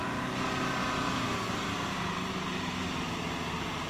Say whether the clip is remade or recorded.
remade